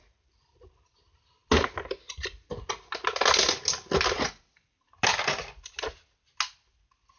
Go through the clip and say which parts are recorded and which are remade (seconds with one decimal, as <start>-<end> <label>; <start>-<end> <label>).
0.0-7.2 recorded